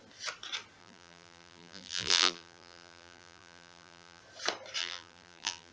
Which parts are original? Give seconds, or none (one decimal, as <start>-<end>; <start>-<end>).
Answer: 0.0-0.8; 4.2-4.8